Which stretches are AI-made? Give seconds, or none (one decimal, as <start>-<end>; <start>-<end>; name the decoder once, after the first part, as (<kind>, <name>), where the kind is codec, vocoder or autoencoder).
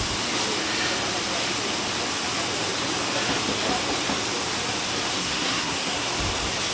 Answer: 5.2-6.1 (codec, SNAC)